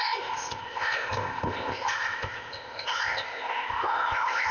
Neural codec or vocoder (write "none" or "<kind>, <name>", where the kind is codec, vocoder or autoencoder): codec, ZipCodec